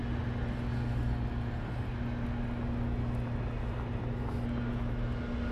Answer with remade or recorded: recorded